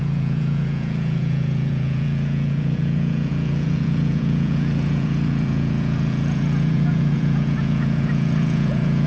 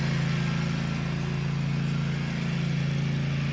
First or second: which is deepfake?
first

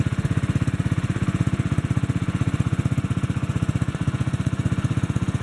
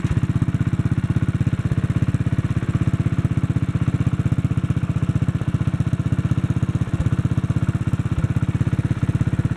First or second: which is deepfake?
first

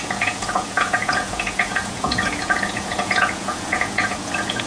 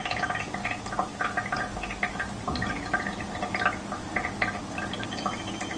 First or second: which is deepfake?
first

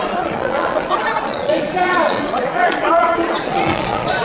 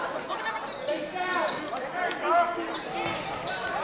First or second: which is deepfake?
first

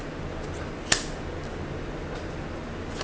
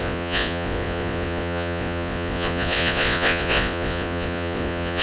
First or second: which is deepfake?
second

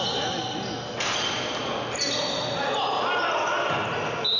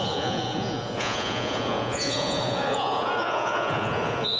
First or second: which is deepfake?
second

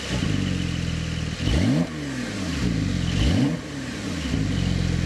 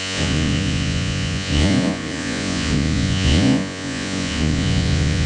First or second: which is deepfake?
second